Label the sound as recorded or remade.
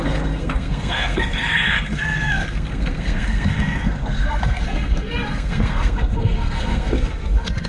remade